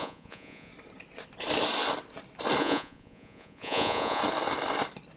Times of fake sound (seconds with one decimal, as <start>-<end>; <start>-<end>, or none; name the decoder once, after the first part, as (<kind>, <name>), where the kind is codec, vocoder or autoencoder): 0.0-0.7 (vocoder, Vocos); 2.6-4.2